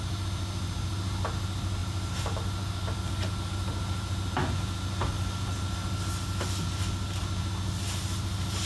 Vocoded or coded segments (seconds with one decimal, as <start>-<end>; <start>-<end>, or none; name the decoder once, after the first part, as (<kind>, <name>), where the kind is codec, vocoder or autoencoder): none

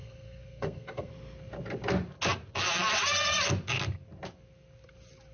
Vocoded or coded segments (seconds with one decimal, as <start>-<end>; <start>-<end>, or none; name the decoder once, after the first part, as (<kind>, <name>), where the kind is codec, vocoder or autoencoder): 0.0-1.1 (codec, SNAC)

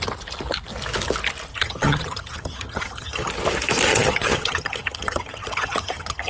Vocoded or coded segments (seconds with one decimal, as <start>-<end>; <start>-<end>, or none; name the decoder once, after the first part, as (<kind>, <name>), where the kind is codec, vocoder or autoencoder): 1.5-3.3 (vocoder, HiFi-GAN); 3.9-6.3

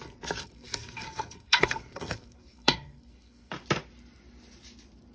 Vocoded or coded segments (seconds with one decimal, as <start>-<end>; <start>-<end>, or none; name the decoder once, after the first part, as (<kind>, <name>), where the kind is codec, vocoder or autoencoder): 0.4-3.5 (codec, SNAC)

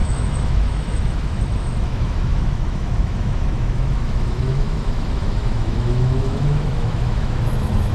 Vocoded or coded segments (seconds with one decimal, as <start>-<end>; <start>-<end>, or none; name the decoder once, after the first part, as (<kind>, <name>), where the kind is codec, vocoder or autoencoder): 0.0-7.9 (autoencoder, DAC-VAE)